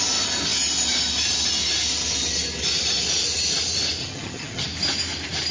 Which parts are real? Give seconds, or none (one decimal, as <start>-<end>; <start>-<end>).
0.0-4.0; 4.6-5.5